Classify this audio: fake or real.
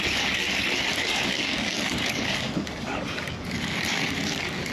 fake